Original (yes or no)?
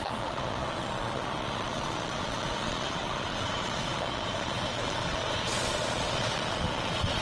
no